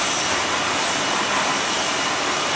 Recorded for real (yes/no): yes